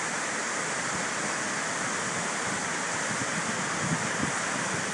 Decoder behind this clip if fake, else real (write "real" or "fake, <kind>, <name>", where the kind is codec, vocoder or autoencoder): real